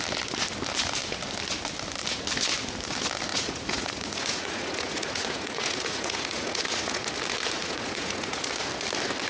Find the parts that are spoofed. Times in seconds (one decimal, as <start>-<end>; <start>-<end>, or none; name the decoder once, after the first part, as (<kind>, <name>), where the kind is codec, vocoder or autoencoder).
3.3-7.1 (vocoder, Vocos); 7.6-8.5